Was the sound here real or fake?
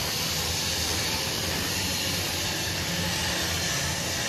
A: fake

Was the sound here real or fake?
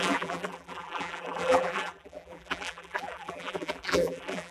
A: fake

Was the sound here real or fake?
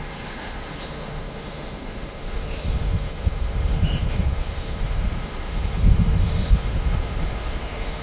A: fake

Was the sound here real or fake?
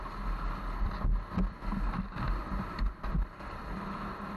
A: real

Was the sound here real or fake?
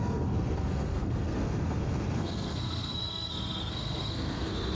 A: fake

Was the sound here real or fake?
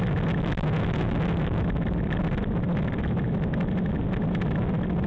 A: real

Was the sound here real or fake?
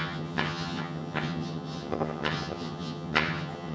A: fake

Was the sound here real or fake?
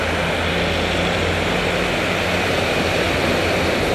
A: real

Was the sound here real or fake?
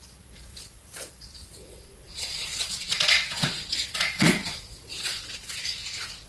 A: fake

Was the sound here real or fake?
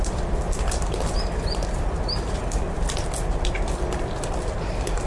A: real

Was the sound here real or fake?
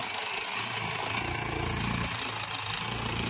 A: real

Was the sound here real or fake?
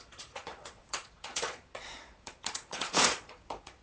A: fake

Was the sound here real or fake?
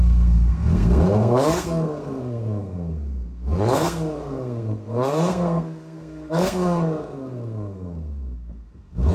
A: fake